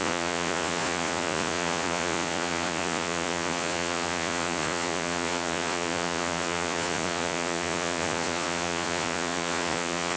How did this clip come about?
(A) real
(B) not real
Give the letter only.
B